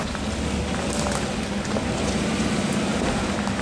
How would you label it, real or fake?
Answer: real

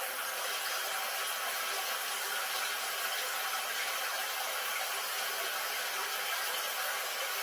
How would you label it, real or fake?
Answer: real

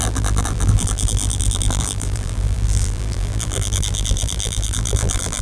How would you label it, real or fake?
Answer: fake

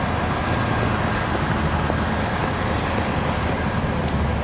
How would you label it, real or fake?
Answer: real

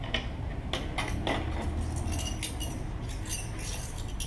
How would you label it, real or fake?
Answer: real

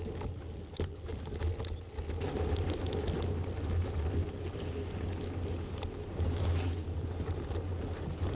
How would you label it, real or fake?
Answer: real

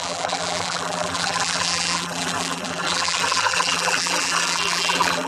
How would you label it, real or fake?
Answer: fake